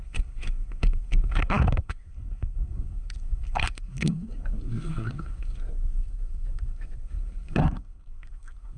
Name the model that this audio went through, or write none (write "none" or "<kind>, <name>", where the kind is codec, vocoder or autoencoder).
codec, SNAC